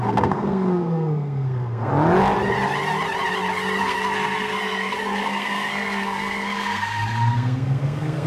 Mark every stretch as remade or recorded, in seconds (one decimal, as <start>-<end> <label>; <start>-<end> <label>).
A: 0.0-1.9 remade; 1.9-3.8 recorded; 3.8-8.3 remade